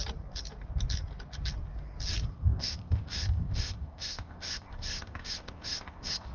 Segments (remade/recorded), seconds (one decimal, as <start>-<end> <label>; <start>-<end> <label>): 0.0-2.3 recorded; 2.3-6.3 remade